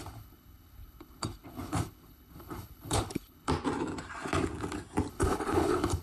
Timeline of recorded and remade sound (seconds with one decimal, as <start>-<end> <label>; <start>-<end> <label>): 0.0-3.5 remade; 3.5-5.1 recorded; 5.1-6.0 remade